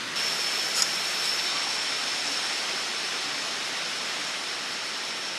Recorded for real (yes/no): yes